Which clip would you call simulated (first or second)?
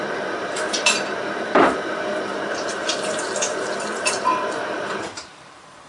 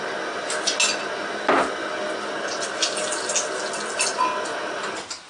first